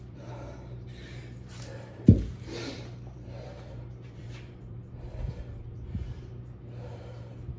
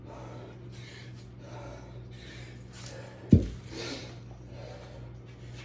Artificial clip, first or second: first